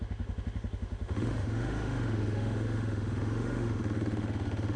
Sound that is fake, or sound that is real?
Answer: fake